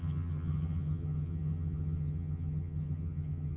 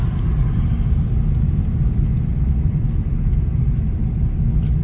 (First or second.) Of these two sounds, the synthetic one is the first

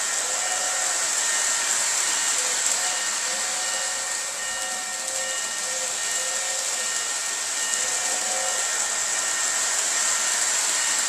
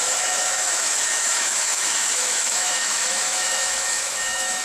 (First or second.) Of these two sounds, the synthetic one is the second